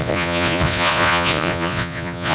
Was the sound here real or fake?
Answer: fake